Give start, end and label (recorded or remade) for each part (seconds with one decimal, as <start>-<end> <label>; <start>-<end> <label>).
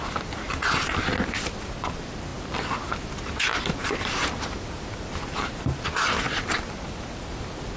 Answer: 0.0-7.8 recorded